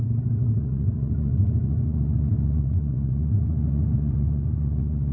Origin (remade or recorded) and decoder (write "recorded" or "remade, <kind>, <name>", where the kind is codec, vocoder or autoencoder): remade, vocoder, Vocos